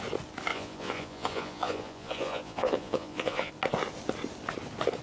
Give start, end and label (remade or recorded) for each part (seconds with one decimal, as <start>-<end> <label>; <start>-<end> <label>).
0.0-0.5 recorded; 0.5-3.5 remade; 3.5-5.0 recorded